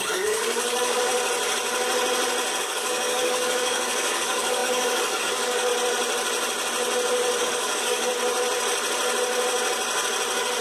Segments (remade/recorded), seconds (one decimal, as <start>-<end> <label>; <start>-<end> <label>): 0.0-1.1 remade; 1.1-2.6 recorded; 2.6-5.7 remade; 5.7-7.4 recorded; 7.4-8.1 remade; 8.1-10.6 recorded